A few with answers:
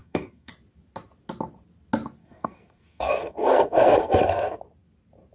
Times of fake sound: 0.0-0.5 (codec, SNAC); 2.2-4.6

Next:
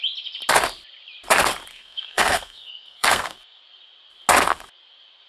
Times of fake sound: 1.7-3.6 (codec, SNAC)

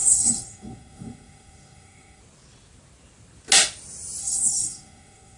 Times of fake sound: 0.0-2.2 (codec, SNAC); 4.2-5.4

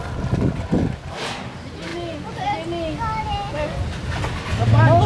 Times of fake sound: none

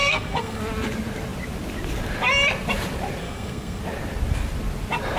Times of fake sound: 0.0-0.6 (codec, SNAC); 3.2-3.8

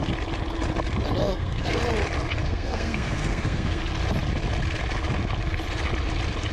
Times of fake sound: 1.2-1.8 (codec, SNAC); 2.4-3.8